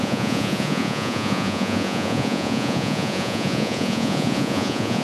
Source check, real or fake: fake